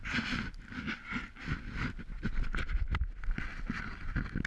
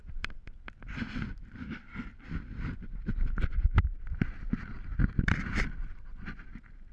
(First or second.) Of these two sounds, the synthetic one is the second